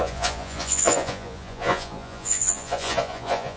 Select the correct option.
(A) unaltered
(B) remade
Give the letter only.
B